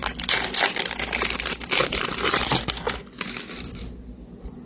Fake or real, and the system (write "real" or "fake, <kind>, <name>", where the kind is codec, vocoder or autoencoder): real